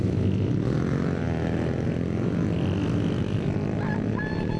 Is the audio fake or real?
real